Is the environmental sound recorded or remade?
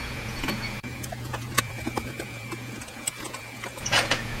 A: remade